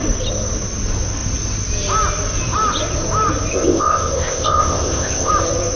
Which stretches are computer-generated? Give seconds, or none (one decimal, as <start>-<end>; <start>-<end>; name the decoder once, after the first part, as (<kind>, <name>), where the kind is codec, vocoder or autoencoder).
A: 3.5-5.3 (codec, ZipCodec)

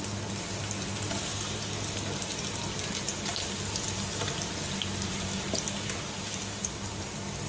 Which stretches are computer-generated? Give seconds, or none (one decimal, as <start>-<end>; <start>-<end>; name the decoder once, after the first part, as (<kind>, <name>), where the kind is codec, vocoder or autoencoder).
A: none

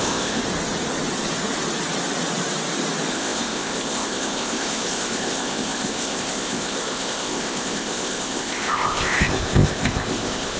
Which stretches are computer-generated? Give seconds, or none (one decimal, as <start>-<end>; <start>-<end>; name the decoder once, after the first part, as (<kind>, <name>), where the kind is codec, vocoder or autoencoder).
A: 0.0-0.4 (codec, ZipCodec); 3.1-10.6